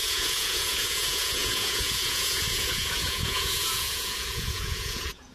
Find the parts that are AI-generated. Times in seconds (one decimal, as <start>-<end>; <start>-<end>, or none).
0.0-5.3